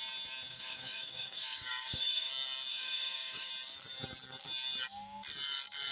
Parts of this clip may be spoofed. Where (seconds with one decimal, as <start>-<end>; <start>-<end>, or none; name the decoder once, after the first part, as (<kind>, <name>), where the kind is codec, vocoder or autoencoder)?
0.5-2.3 (codec, DAC); 2.7-3.5

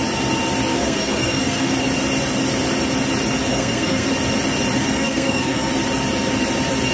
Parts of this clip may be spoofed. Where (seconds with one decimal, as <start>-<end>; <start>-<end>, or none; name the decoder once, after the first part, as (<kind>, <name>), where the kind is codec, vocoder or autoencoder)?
0.7-1.7 (codec, SNAC); 3.5-4.1; 4.8-5.7